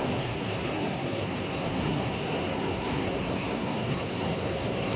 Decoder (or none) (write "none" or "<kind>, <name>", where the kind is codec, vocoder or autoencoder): codec, SNAC